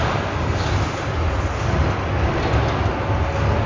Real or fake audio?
real